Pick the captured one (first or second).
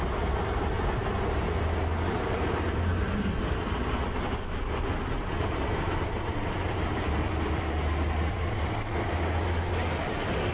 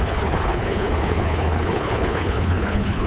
first